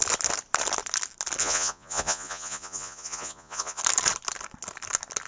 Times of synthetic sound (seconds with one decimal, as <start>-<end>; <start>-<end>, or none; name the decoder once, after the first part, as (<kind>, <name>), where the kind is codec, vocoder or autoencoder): 1.4-3.8 (vocoder, Vocos)